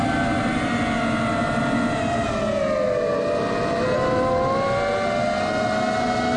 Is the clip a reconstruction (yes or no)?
no